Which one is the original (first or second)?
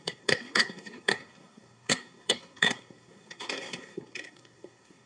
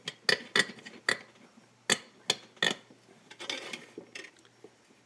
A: second